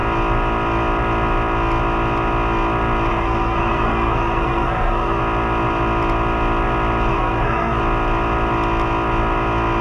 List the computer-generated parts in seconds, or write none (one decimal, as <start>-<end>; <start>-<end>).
3.1-5.2; 7.1-7.8